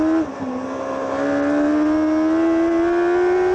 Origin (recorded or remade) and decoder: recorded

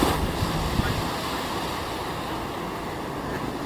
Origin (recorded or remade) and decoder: recorded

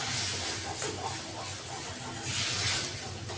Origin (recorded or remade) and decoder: recorded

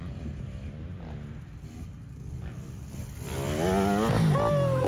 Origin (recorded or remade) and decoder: recorded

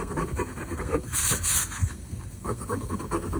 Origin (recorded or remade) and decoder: remade, codec, SNAC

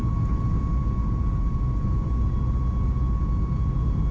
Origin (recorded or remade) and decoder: recorded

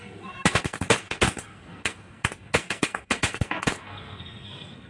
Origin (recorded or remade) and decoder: remade, codec, SNAC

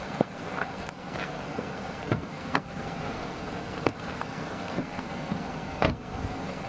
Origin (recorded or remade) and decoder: remade, codec, SNAC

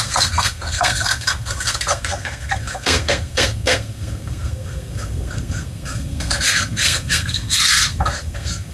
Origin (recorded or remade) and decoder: remade, codec, SNAC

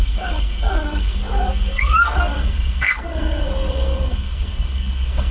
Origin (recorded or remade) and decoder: remade, codec, SNAC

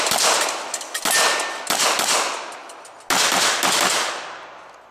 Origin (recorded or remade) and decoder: recorded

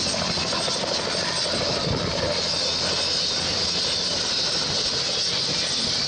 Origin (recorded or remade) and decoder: recorded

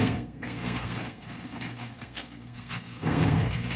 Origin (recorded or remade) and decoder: remade, codec, SNAC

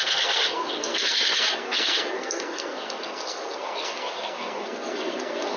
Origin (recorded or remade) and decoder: remade, codec, SNAC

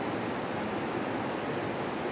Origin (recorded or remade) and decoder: recorded